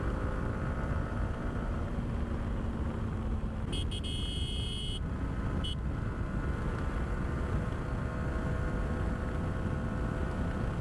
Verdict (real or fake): real